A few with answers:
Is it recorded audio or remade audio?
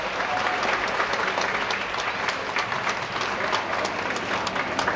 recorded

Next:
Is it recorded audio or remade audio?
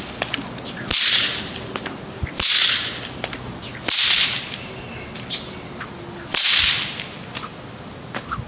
recorded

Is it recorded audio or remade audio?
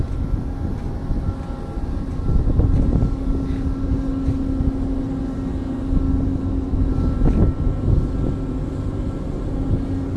recorded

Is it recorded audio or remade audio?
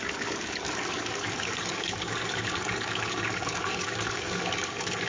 remade